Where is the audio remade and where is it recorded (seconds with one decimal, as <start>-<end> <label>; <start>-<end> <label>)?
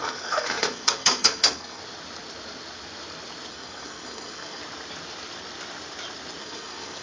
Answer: 0.0-1.8 remade; 1.8-3.5 recorded; 3.5-4.6 remade; 4.6-6.4 recorded; 6.4-7.0 remade